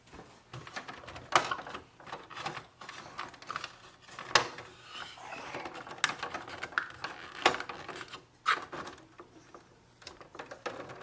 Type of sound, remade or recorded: recorded